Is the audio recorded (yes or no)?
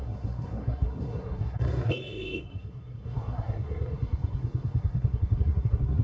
no